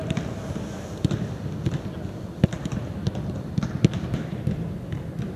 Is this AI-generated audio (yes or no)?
no